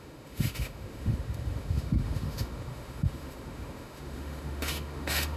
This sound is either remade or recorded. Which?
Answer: remade